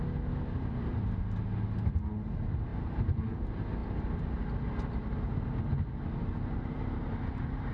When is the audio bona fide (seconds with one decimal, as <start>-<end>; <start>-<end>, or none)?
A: 0.0-7.7